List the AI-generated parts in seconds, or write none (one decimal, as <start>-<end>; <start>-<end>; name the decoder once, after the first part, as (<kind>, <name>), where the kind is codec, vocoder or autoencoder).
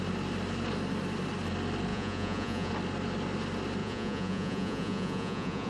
1.9-2.7 (vocoder, Vocos); 3.8-5.7